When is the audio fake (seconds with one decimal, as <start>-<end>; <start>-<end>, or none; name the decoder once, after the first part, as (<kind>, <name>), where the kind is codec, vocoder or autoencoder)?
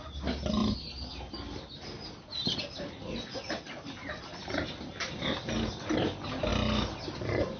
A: none